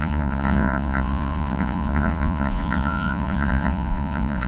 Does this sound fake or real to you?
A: fake